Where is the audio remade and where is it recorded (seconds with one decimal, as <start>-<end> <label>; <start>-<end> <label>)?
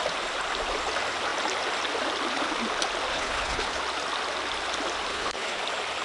0.0-3.1 recorded; 3.1-3.8 remade; 3.8-5.1 recorded; 5.1-5.6 remade; 5.6-6.0 recorded